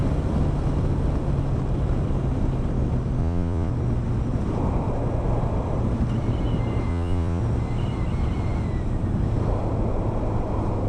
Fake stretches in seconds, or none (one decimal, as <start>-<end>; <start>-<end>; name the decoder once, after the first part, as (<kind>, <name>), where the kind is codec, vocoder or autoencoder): 3.2-3.7 (vocoder, Vocos); 6.9-7.4

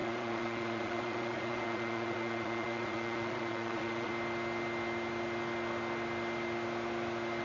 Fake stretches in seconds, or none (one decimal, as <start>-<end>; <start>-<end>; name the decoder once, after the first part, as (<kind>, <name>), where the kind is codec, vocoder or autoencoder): 0.0-4.1 (vocoder, Vocos)

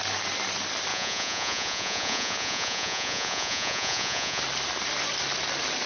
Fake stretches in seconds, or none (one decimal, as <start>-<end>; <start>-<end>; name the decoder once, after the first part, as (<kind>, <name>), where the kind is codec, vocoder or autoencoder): 0.9-4.4 (vocoder, Vocos)

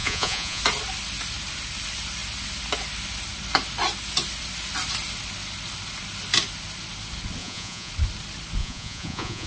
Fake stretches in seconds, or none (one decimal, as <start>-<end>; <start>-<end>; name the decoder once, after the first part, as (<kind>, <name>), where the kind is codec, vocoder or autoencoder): 0.0-0.6 (vocoder, Vocos); 7.4-7.9; 8.6-9.5

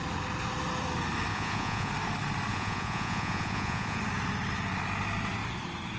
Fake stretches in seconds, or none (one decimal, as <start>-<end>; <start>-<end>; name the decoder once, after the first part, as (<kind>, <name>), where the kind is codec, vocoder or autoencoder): 1.3-1.9 (vocoder, Vocos); 2.5-4.0